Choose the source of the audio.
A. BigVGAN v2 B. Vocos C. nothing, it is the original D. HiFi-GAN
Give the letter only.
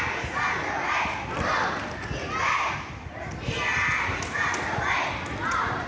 C